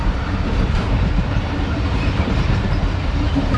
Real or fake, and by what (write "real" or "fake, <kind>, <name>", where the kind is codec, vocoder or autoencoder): fake, vocoder, BigVGAN v2